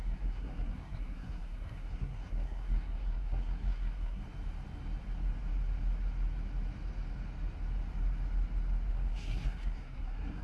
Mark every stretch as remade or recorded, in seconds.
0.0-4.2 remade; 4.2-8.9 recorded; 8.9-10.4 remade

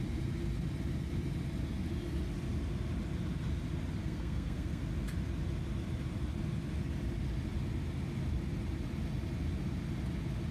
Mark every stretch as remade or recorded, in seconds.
0.0-4.0 recorded; 4.0-4.8 remade; 4.8-10.5 recorded